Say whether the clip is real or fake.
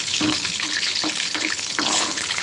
fake